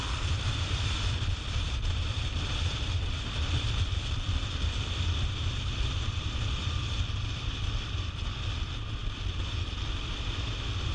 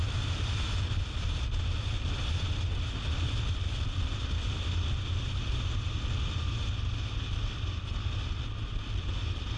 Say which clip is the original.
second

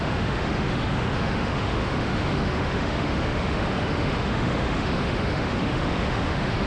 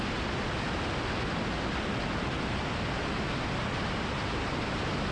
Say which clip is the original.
second